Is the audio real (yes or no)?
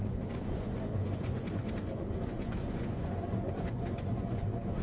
no